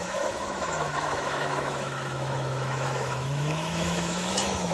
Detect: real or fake fake